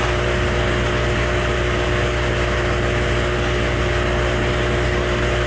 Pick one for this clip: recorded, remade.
recorded